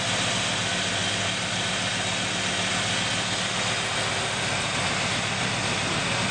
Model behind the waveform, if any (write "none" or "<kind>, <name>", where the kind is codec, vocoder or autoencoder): none